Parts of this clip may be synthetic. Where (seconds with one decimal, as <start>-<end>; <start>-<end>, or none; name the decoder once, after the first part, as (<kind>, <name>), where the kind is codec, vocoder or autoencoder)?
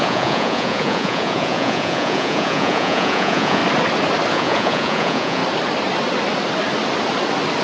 0.0-3.6 (vocoder, Vocos); 4.3-5.4